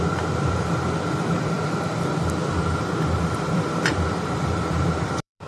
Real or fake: fake